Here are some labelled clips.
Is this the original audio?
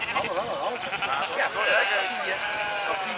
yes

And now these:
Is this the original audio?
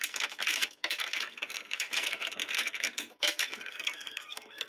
no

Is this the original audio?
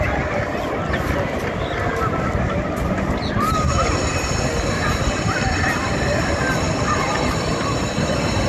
yes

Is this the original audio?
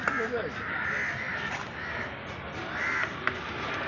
yes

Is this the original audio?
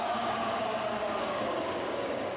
no